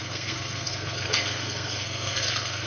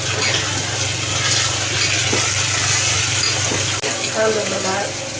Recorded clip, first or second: second